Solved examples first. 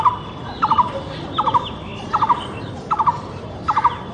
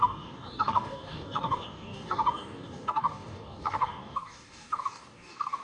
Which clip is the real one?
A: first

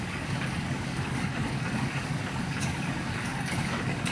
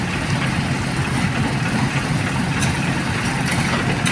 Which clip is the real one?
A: second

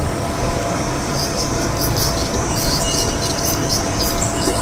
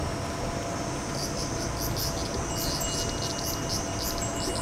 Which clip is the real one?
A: second